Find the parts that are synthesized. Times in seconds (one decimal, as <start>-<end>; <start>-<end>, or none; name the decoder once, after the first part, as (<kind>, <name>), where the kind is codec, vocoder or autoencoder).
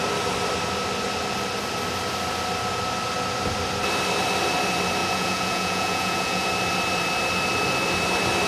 5.0-6.5 (vocoder, Vocos)